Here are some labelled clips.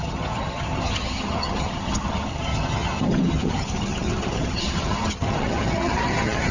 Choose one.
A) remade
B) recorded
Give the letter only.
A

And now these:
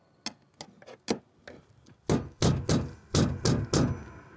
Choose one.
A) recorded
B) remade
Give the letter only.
A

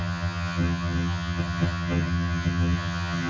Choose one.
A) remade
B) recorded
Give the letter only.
A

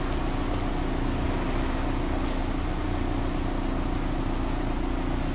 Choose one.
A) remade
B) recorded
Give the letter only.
B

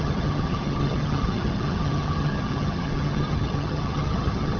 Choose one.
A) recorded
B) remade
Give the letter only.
B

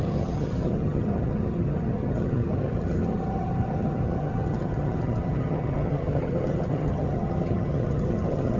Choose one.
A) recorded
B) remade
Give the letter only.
B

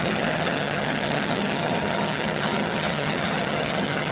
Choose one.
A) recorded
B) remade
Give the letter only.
B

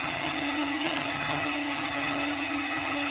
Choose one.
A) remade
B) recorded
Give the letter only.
A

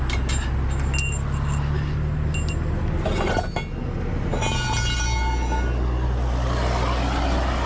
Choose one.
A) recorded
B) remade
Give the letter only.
A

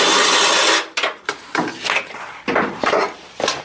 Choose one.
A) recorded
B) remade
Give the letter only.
A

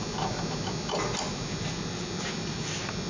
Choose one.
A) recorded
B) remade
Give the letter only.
A